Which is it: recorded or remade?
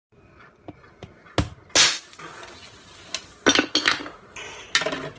recorded